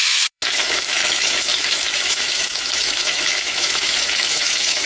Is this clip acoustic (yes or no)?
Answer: no